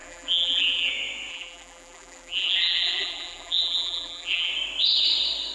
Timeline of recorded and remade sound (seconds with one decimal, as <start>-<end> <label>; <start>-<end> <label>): 0.0-0.9 remade; 0.9-1.3 recorded; 1.3-4.5 remade; 4.5-5.5 recorded

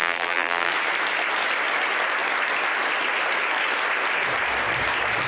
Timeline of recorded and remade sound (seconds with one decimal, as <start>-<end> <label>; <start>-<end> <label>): 0.0-0.7 remade; 0.7-5.3 recorded

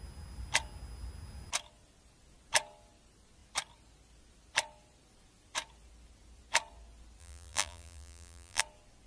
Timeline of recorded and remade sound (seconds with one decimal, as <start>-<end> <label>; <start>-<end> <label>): 0.0-7.2 recorded; 7.2-8.6 remade; 8.6-9.1 recorded